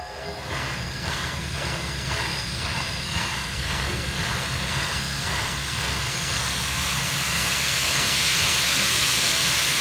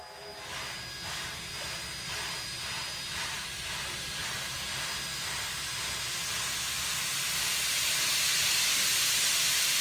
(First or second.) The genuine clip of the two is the second